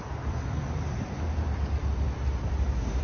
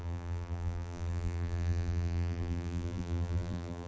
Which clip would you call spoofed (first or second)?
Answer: second